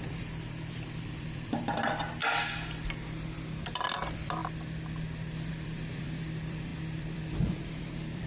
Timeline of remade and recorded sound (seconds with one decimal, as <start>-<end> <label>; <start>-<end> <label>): 0.0-2.2 remade; 2.2-3.6 recorded; 3.6-4.4 remade; 4.4-5.5 recorded; 5.5-8.3 remade